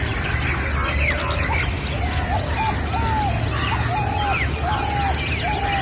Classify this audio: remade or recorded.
recorded